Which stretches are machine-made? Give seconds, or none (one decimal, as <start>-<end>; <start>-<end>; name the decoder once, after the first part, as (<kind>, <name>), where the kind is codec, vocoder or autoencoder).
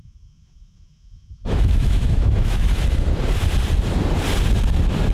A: 0.0-2.7 (autoencoder, DAC-VAE)